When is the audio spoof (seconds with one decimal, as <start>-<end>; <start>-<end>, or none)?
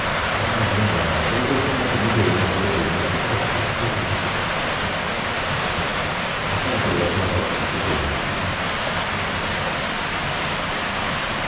none